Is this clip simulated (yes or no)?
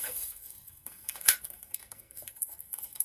yes